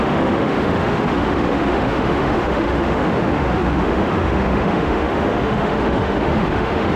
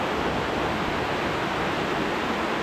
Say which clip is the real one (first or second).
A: second